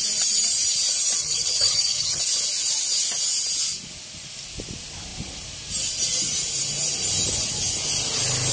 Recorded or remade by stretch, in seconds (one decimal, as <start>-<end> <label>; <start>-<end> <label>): 0.0-1.2 recorded; 1.2-2.2 remade; 2.2-8.5 recorded